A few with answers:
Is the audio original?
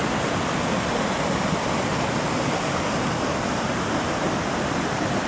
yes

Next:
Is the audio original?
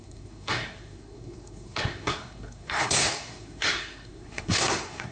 no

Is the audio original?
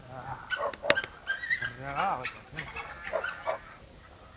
yes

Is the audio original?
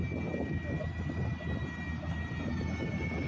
yes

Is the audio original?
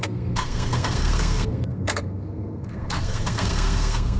no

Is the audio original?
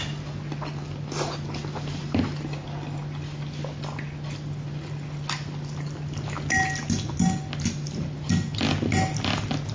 yes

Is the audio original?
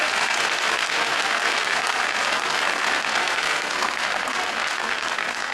no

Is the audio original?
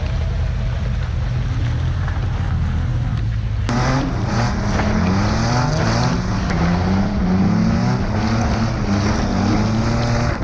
yes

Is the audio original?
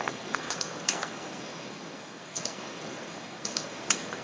no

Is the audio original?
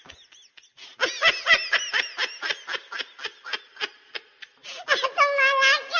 yes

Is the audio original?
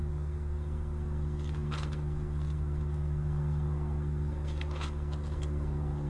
no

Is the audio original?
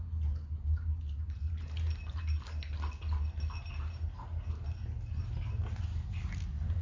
yes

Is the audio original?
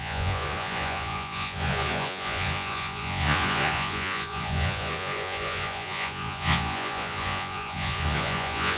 no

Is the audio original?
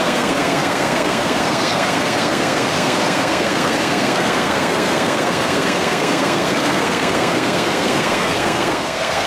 no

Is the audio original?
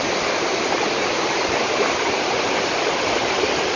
yes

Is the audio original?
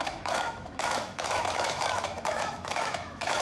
no